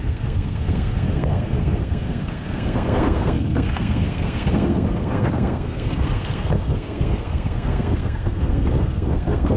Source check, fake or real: fake